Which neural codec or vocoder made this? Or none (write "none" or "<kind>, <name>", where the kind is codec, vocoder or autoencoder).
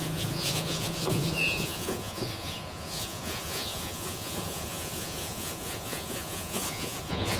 vocoder, Vocos